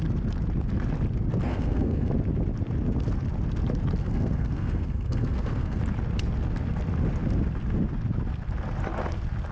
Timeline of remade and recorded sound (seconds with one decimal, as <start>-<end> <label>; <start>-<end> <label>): 0.0-1.5 recorded; 1.5-2.1 remade; 2.1-4.0 recorded; 4.0-5.8 remade; 5.8-9.5 recorded